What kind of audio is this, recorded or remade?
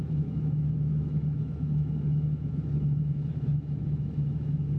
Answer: remade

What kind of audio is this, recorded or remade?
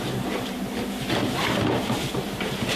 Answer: remade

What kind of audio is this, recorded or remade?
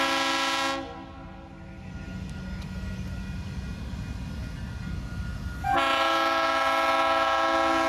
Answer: recorded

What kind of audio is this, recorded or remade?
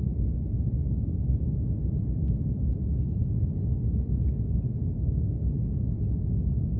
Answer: recorded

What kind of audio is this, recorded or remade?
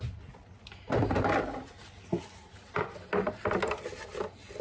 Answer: recorded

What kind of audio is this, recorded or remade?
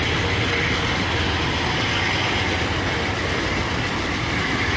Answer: recorded